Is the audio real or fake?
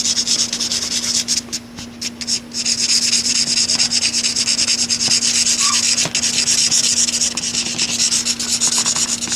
real